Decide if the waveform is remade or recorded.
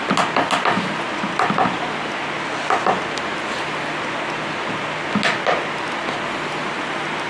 recorded